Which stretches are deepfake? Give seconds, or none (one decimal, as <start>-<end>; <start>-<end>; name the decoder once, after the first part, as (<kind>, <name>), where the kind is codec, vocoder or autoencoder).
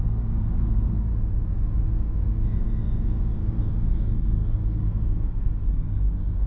0.0-1.1 (codec, SNAC); 3.9-6.5